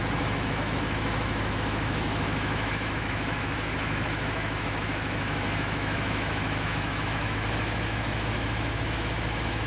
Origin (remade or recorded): remade